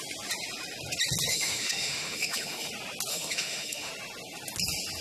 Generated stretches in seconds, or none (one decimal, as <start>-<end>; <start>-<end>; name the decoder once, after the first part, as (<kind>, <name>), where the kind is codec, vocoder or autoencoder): 1.3-2.7 (autoencoder, DAC-VAE); 3.1-3.9